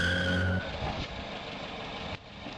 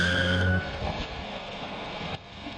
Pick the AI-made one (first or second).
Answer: second